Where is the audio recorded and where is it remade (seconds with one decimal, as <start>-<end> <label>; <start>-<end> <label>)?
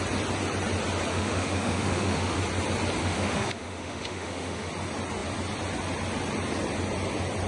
0.0-1.1 recorded; 1.1-2.4 remade; 2.4-3.0 recorded; 3.0-4.7 remade; 4.7-7.5 recorded